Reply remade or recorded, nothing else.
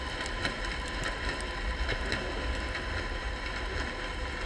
recorded